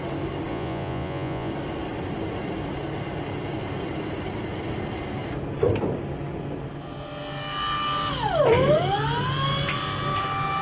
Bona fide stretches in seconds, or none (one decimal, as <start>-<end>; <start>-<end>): 0.0-0.5; 1.5-10.6

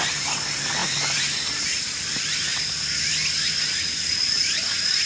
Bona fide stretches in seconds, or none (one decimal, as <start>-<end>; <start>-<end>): 0.0-5.1

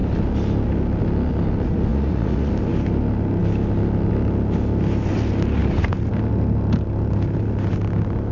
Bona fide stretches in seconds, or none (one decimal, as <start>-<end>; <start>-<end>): 0.0-1.9; 2.5-8.3

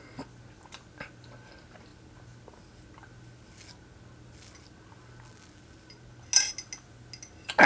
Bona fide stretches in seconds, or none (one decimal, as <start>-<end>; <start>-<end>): 0.0-7.7

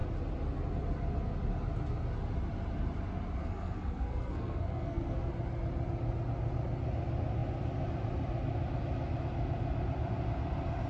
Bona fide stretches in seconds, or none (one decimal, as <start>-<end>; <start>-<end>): 0.0-3.4; 5.3-10.9

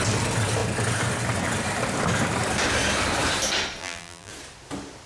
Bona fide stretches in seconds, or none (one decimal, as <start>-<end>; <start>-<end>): 0.0-3.8; 4.3-5.1